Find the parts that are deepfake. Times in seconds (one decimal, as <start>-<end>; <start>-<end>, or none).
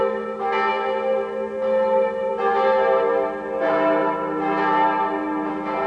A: none